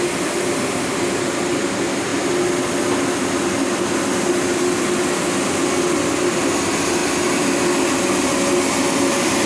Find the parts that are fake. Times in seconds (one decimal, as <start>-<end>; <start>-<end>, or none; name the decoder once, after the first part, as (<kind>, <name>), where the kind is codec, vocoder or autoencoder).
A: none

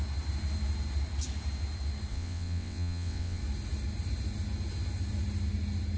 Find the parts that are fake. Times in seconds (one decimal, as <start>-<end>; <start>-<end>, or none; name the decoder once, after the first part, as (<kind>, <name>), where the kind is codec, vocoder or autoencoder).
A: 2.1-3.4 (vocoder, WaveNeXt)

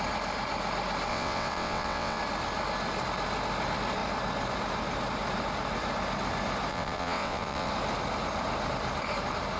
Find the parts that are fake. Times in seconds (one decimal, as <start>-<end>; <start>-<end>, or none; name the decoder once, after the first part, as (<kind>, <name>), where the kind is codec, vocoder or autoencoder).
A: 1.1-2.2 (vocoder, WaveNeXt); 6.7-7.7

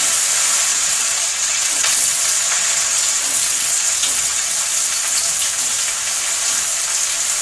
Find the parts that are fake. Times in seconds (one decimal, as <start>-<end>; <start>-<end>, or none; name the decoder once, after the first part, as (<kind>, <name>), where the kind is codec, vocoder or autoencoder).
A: 0.7-4.6 (vocoder, WaveNeXt)

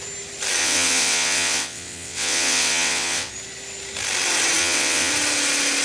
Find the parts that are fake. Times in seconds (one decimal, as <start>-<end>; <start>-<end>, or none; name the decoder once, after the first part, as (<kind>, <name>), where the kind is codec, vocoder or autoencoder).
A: 0.6-3.3 (vocoder, WaveNeXt); 4.6-5.1